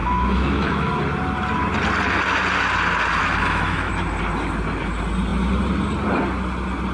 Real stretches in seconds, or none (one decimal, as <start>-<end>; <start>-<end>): 0.9-3.2; 3.9-6.9